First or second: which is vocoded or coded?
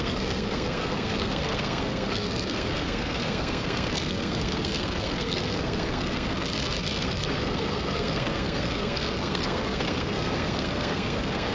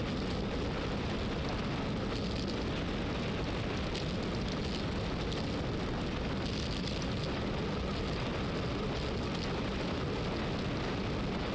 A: first